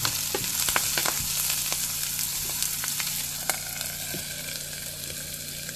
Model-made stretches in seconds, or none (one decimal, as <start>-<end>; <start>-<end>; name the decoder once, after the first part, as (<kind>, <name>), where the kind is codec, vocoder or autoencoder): 2.3-3.1 (vocoder, BigVGAN v2)